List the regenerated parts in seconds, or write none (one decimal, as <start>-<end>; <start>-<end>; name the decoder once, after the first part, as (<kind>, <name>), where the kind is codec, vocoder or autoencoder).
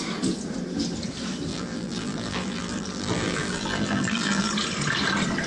1.5-4.5 (vocoder, BigVGAN v2)